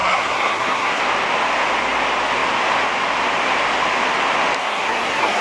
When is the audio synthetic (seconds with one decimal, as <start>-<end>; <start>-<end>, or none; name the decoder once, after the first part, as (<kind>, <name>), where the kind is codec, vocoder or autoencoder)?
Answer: 0.0-1.0 (codec, SNAC); 4.6-5.4